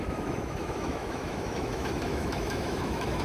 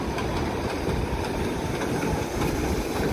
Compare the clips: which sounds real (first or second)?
second